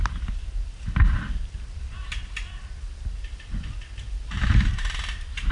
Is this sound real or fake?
real